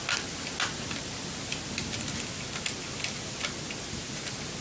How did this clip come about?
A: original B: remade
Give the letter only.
A